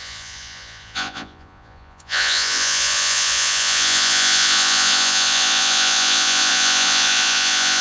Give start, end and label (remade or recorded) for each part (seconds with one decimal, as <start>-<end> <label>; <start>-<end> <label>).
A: 0.0-7.8 remade